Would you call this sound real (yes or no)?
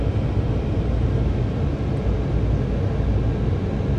yes